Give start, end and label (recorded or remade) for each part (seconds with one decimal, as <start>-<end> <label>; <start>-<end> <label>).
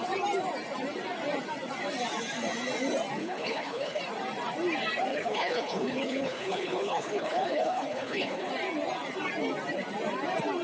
0.0-3.2 recorded; 3.2-4.0 remade; 4.0-5.1 recorded; 5.1-8.5 remade; 8.5-10.6 recorded